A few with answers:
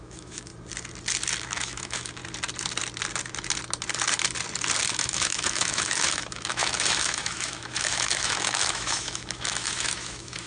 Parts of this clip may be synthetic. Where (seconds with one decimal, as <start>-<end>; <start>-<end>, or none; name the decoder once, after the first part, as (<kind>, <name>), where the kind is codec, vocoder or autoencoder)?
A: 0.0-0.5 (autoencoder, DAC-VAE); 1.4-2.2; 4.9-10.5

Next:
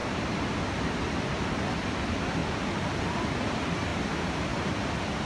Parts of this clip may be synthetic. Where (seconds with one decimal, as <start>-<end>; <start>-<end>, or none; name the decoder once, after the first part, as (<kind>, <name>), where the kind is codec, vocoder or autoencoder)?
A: 0.0-1.4 (vocoder, BigVGAN v2); 3.9-4.7

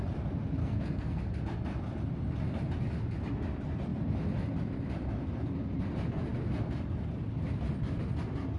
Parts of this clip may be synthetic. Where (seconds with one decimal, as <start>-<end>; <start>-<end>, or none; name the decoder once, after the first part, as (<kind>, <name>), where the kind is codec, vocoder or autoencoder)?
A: 0.6-1.2 (codec, SNAC)

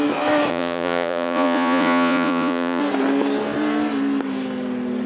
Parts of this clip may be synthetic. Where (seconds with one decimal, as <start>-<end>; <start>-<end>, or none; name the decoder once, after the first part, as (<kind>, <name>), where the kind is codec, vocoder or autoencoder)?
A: 0.5-2.8 (vocoder, Vocos)

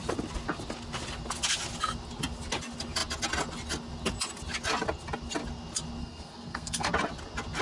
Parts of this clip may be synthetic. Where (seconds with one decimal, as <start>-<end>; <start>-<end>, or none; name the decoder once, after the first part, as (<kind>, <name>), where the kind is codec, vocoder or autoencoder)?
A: 6.0-6.9 (codec, SNAC)

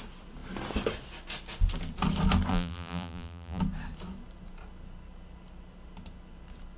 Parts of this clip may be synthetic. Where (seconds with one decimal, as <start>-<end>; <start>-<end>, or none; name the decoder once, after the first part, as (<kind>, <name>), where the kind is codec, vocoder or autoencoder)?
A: 2.5-3.6 (vocoder, BigVGAN v2)

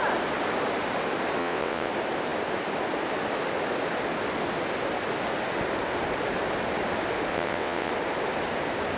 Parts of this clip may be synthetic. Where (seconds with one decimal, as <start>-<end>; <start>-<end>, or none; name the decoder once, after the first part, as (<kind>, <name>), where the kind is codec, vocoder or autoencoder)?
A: 1.4-1.9 (vocoder, WaveNeXt); 7.3-7.9